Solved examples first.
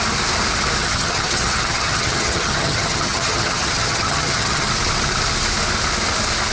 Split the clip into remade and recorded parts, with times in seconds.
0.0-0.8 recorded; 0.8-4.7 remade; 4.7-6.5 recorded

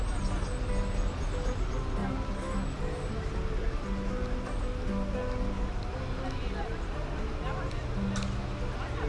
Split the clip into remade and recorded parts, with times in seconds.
0.0-9.1 recorded

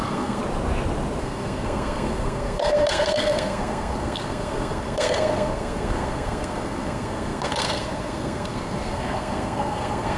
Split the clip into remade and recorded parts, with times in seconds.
0.0-0.4 remade; 0.4-1.2 recorded; 1.2-10.2 remade

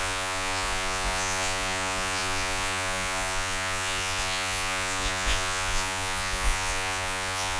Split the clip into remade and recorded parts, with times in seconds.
0.0-7.6 remade